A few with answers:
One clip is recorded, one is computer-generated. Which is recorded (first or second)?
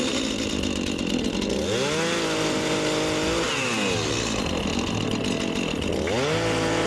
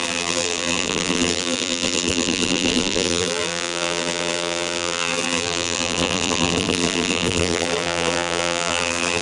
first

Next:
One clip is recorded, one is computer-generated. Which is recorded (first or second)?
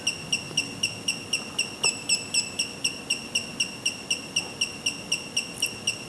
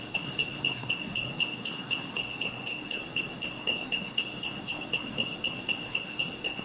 first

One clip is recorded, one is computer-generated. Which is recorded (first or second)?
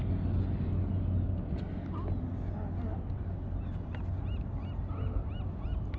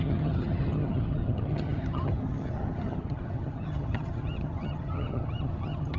first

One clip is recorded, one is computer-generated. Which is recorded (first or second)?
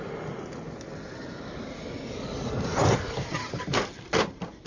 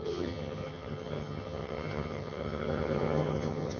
first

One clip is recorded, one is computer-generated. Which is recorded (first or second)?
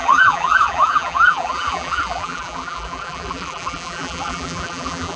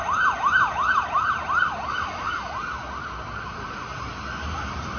second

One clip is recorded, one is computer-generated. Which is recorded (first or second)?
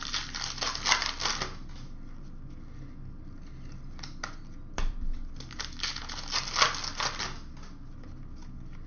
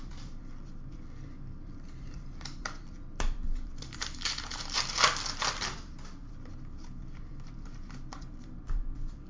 first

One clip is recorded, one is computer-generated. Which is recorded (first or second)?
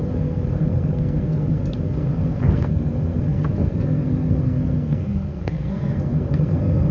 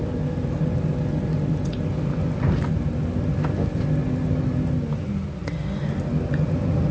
second